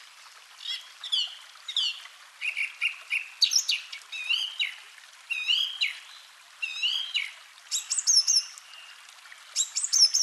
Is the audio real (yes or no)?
yes